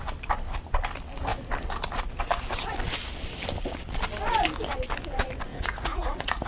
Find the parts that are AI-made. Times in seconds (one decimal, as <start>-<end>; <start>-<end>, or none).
5.5-6.5